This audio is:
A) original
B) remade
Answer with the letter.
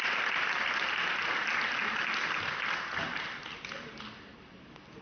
A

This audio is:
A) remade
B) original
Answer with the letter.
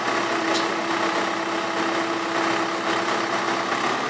B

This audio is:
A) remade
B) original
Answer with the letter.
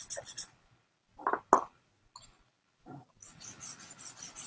B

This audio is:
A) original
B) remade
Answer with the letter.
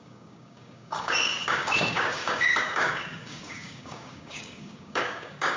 B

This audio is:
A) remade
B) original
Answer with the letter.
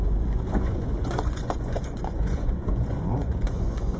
A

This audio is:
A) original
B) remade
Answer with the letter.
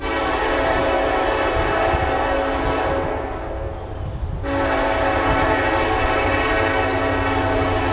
A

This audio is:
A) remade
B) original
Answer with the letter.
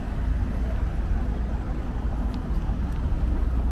B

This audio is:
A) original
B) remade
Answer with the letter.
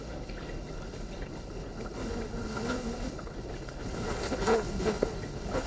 B